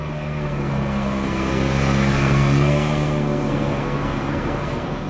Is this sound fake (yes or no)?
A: yes